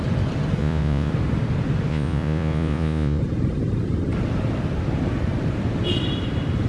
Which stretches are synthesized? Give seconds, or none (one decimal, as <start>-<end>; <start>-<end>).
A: 0.6-1.1; 1.9-3.2